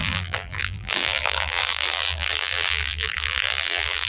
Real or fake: fake